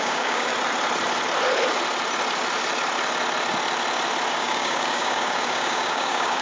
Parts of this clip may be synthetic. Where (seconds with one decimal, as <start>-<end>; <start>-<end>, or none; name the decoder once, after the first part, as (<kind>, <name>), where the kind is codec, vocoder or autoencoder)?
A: 0.0-0.5 (codec, DAC); 4.3-6.4